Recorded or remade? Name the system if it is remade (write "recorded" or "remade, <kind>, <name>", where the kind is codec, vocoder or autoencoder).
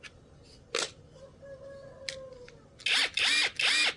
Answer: recorded